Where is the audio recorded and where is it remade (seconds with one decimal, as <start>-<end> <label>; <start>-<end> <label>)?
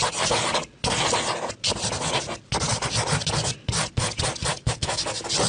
0.0-4.5 recorded; 4.5-5.0 remade; 5.0-5.5 recorded